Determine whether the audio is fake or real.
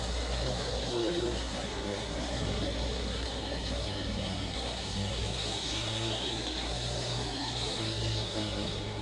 fake